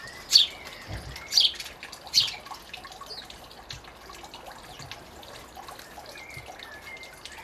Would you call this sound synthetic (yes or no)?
no